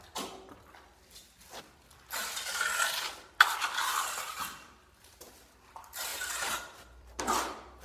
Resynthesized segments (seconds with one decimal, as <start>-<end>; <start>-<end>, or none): 6.1-7.2